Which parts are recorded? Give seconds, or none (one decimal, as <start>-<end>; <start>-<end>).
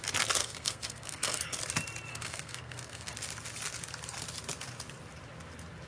0.0-0.4; 1.4-2.1; 3.1-5.9